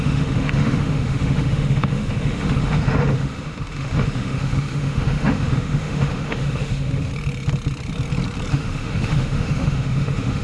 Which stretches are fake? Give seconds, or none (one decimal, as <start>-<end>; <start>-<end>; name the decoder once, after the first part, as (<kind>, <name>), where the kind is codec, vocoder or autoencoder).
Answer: 0.0-7.1 (autoencoder, DAC-VAE); 8.5-10.4